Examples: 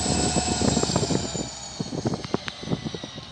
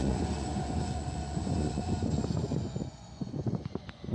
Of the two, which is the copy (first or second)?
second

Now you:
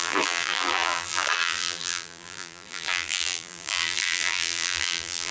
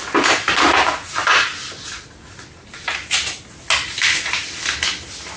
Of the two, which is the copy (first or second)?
first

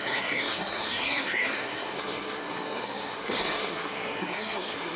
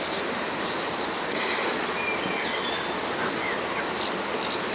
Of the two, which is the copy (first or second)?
first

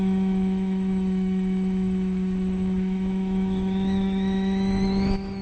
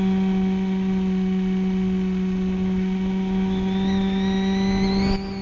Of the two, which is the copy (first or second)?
first